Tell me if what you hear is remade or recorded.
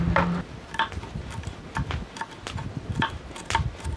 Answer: recorded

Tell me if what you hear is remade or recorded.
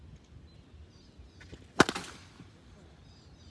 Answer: recorded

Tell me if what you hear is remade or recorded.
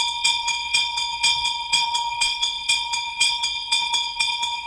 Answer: remade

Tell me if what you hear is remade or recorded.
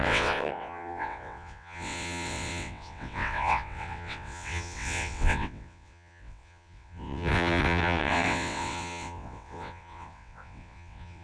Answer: remade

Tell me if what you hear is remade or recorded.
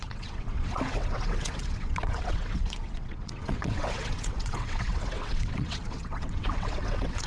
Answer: remade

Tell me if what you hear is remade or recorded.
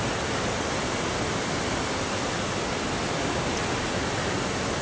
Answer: recorded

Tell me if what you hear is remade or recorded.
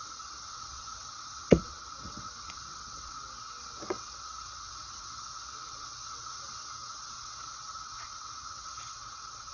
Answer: remade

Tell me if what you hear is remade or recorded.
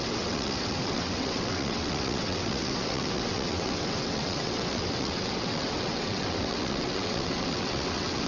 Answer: remade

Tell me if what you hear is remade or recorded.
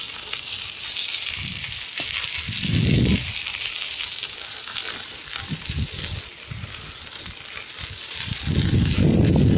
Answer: recorded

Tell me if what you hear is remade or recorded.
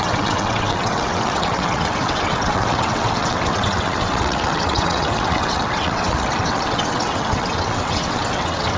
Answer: remade